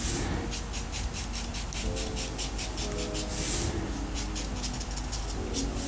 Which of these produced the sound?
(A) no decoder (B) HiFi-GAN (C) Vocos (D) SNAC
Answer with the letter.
A